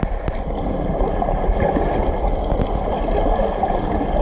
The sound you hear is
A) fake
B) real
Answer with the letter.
B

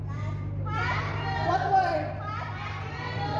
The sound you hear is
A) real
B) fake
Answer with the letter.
B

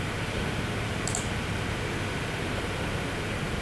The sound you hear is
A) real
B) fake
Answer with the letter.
A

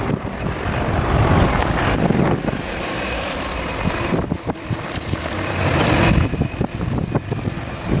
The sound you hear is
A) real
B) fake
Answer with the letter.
B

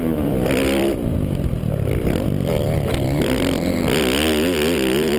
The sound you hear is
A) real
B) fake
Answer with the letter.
B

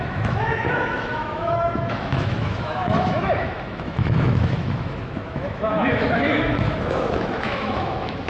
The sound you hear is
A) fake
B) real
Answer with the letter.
A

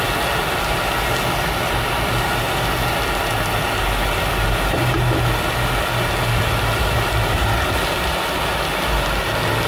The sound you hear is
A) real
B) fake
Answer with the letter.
A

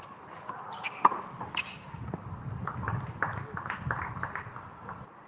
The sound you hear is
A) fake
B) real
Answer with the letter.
B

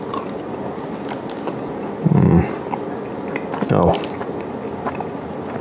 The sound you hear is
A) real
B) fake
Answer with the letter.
A